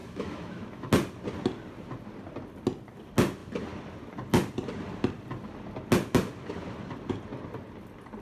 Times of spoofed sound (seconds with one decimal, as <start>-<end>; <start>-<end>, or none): 0.0-0.9